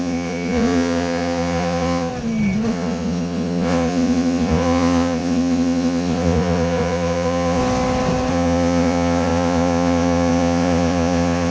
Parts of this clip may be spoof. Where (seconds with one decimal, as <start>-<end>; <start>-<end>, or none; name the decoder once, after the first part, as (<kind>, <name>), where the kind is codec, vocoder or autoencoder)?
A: 0.0-2.1 (vocoder, Vocos); 2.7-7.6; 8.3-11.5